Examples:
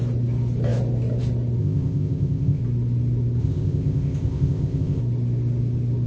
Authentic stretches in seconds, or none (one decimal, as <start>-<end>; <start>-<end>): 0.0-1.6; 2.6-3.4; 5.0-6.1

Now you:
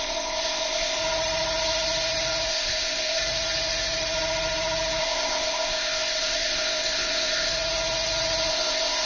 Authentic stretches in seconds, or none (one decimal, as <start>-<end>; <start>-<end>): 1.0-2.5; 3.2-5.0; 7.5-8.5

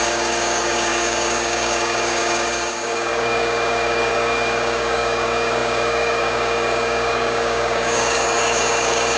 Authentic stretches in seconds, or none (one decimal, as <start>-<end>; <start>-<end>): none